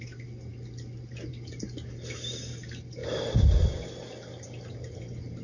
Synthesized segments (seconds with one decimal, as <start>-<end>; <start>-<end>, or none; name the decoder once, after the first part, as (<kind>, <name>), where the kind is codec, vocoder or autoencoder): 3.0-3.7 (vocoder, BigVGAN v2)